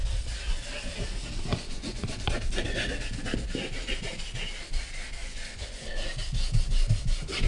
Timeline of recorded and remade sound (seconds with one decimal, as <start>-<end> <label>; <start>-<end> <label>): 0.0-1.5 recorded; 1.5-2.3 remade; 2.3-5.2 recorded; 5.2-5.9 remade; 5.9-7.5 recorded